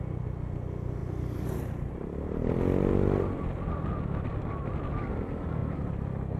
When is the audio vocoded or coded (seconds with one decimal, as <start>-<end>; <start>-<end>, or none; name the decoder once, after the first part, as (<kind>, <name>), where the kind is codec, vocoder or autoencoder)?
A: none